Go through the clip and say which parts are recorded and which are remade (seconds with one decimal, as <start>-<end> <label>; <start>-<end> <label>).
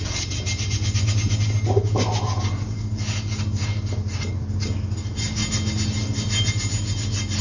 0.0-3.7 recorded; 3.7-4.6 remade; 4.6-7.4 recorded